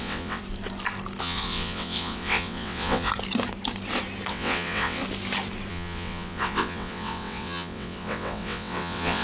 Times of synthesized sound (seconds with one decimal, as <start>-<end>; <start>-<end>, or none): 0.0-0.4; 1.2-3.1; 4.3-5.0; 5.7-9.2